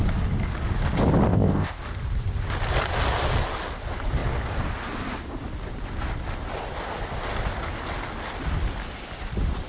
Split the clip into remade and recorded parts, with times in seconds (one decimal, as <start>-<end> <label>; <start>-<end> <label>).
0.0-1.3 recorded; 1.3-1.8 remade; 1.8-9.7 recorded